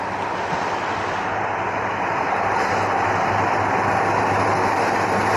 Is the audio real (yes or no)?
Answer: yes